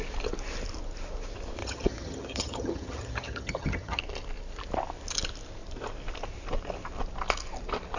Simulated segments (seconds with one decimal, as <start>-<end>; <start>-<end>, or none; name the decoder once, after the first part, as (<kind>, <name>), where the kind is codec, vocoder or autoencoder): 1.6-4.0 (vocoder, HiFi-GAN)